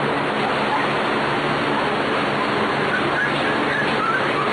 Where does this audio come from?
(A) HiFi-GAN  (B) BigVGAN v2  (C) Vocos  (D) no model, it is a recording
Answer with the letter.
D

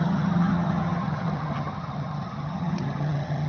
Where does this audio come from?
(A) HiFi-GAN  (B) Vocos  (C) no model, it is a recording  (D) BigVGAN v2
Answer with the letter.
A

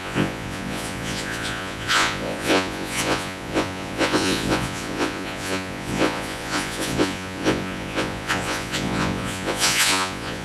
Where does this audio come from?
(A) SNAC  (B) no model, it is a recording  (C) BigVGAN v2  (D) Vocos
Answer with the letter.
D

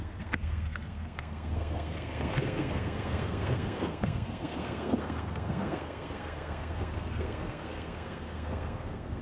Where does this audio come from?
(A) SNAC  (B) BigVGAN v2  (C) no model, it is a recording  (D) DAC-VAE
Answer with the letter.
A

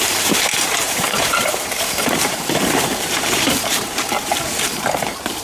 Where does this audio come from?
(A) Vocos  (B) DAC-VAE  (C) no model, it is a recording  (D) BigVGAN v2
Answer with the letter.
D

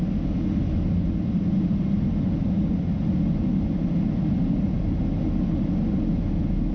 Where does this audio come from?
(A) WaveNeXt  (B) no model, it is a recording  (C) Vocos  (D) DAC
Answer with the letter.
B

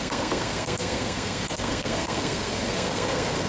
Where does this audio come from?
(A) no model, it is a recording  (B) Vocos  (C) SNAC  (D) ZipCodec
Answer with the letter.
C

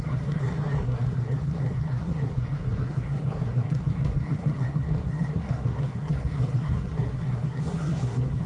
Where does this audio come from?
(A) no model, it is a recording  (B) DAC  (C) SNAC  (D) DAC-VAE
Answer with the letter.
C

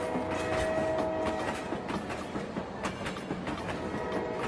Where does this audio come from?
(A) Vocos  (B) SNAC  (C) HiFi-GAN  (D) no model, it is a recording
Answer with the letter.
D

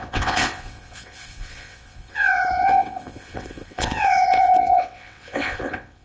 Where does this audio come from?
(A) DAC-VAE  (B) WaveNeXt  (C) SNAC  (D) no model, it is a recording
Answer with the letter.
B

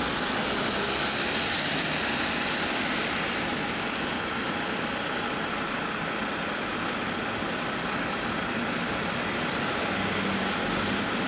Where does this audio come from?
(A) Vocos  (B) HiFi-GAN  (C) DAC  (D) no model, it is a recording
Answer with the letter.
D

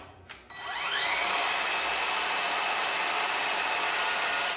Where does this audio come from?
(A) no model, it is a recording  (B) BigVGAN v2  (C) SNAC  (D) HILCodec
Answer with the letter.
A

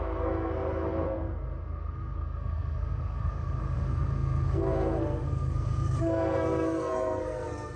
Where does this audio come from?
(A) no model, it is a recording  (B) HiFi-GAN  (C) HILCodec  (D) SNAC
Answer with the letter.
D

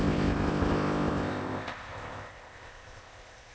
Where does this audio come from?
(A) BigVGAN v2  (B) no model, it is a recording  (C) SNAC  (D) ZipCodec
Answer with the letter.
D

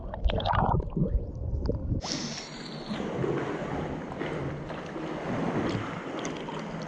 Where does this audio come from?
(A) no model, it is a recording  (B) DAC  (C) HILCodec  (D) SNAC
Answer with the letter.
A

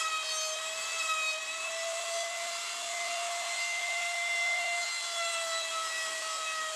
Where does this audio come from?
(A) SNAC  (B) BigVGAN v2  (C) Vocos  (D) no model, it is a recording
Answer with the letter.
B